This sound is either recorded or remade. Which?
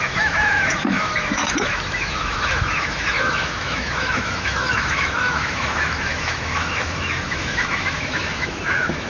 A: remade